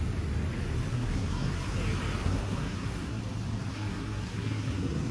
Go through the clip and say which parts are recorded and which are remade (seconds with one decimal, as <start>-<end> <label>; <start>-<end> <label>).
0.0-0.9 recorded; 0.9-1.7 remade; 1.7-2.2 recorded; 2.2-3.2 remade; 3.2-3.7 recorded; 3.7-5.1 remade